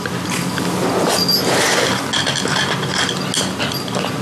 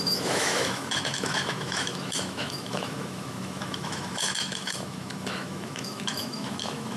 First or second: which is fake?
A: second